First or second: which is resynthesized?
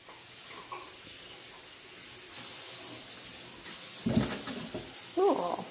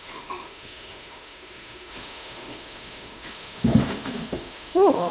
second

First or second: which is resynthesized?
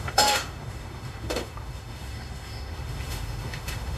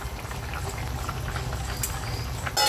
first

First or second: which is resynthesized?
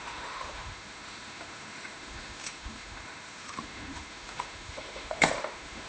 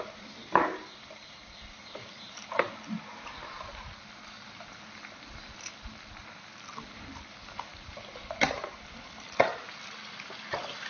first